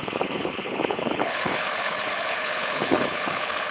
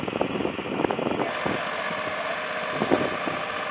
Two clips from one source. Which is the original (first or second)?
second